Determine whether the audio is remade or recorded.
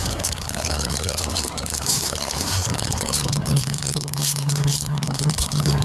remade